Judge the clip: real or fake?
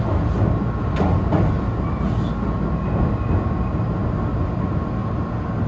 real